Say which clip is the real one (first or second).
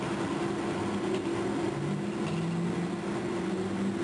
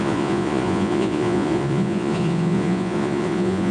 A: first